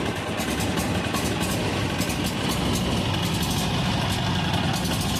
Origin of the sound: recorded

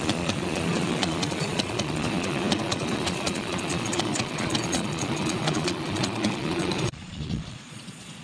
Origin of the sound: remade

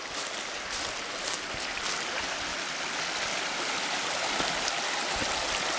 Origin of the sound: recorded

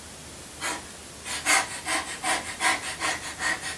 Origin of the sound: recorded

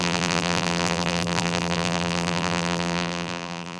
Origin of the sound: remade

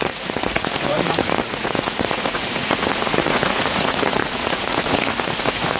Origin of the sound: remade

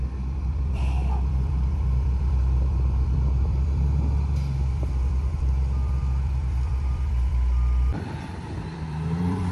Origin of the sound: remade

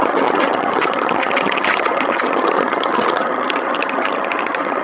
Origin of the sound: remade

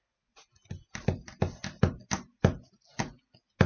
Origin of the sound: recorded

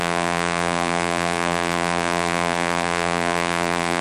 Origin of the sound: remade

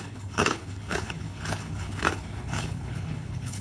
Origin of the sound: remade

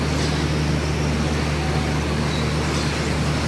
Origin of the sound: recorded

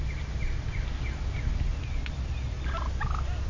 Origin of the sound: recorded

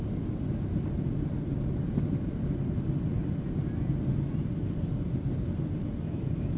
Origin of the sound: recorded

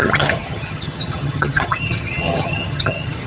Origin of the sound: remade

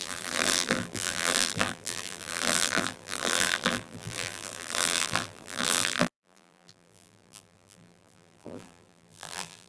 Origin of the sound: remade